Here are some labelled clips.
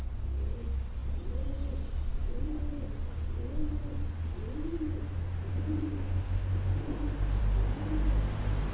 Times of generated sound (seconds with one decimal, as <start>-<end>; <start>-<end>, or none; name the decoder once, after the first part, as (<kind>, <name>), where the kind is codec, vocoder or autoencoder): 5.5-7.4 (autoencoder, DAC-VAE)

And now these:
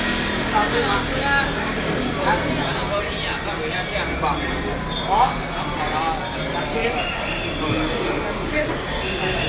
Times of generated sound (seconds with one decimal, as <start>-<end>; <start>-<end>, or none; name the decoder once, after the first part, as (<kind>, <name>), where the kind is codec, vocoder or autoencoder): none

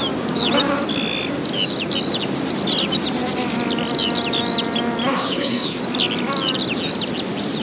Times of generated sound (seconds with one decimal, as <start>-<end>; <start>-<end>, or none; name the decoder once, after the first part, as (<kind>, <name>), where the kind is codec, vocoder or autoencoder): 5.1-5.8 (codec, SNAC)

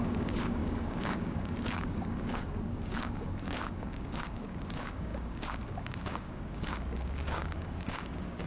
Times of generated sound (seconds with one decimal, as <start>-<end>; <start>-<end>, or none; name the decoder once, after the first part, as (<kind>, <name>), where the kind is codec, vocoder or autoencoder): 0.0-8.5 (codec, DAC)

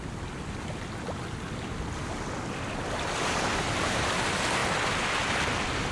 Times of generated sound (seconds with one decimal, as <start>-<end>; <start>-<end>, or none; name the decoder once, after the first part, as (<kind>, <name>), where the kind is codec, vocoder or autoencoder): none